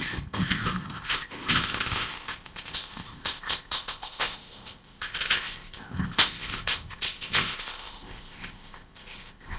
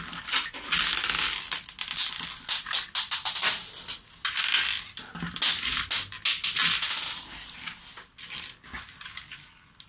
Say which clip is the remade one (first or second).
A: first